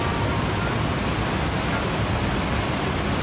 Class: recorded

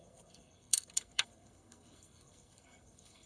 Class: remade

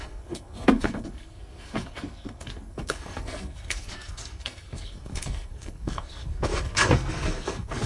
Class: remade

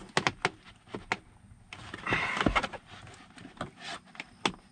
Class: recorded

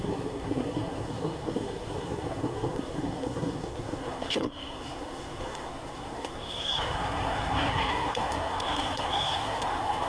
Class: remade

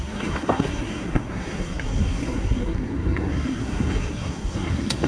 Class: remade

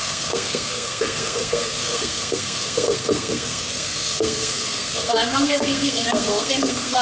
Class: remade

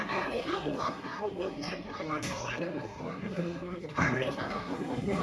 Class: remade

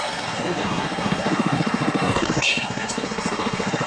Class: remade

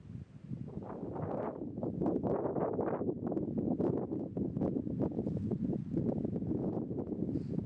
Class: recorded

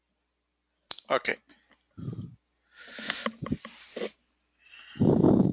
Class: recorded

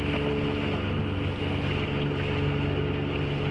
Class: recorded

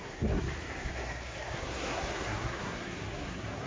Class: remade